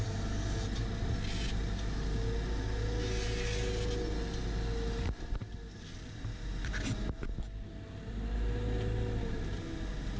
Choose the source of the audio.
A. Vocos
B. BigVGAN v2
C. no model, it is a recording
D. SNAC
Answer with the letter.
C